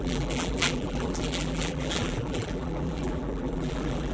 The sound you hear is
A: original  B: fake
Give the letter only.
B